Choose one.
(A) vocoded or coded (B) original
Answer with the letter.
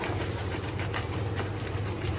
B